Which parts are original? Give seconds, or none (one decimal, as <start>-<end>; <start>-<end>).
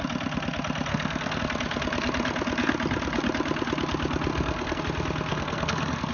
0.0-0.9; 1.4-4.3; 4.8-5.3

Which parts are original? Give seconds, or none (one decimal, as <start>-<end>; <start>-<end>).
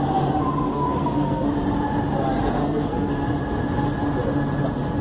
0.0-0.7; 1.5-2.6; 3.1-5.0